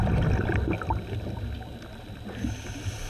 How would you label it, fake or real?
real